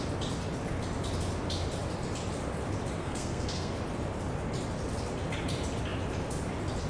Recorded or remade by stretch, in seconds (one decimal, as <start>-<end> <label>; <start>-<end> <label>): 0.0-3.0 recorded; 3.0-3.7 remade; 3.7-6.9 recorded